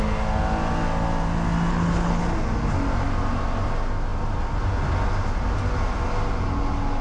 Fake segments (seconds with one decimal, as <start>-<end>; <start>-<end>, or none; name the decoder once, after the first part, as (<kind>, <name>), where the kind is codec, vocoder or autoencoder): 1.7-2.2 (codec, HILCodec)